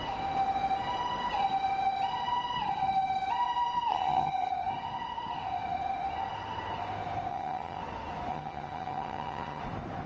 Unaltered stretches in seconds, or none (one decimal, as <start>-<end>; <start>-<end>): 0.0-3.9; 4.5-7.3; 7.8-8.3; 9.6-10.1